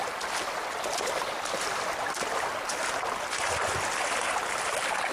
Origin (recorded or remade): recorded